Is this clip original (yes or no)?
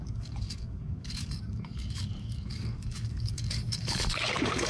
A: no